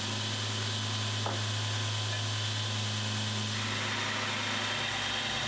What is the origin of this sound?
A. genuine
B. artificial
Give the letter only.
A